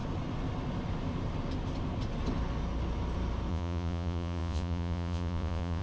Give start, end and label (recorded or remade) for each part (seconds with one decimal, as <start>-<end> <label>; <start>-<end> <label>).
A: 0.0-3.5 recorded; 3.5-5.8 remade